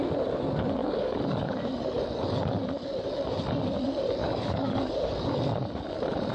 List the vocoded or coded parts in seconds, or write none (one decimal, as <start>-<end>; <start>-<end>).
0.8-1.7; 4.2-4.9